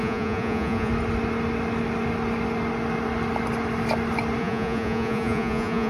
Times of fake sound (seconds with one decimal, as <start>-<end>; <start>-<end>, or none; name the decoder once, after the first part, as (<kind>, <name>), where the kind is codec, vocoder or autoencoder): 0.0-0.9 (vocoder, Vocos); 4.4-5.9